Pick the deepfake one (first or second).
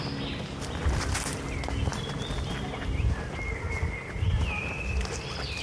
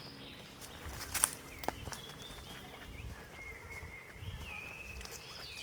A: second